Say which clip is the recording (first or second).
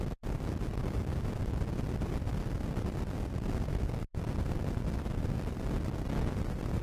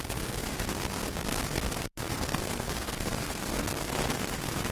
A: first